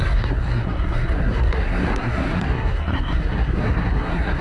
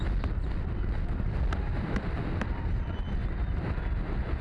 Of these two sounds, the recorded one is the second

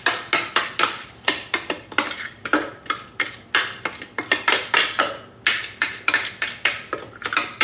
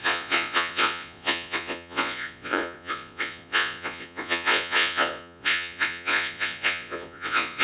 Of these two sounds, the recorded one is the first